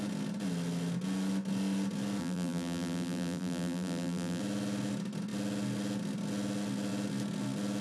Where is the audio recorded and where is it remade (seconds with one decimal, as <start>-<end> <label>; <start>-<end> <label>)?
0.0-2.2 recorded; 2.2-4.4 remade; 4.4-7.8 recorded